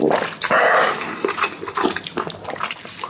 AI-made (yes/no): no